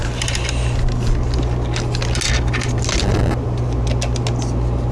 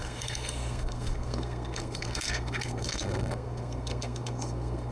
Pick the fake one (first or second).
second